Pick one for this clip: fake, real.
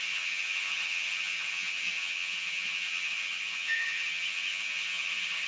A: fake